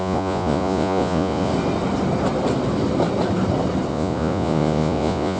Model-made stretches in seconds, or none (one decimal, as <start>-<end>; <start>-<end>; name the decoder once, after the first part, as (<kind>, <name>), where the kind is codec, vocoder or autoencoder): 0.0-1.5 (vocoder, Vocos); 3.9-5.4